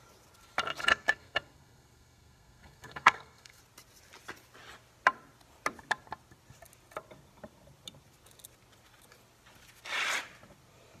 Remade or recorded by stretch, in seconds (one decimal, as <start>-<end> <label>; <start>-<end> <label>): 0.0-0.8 recorded; 0.8-3.6 remade; 3.6-11.0 recorded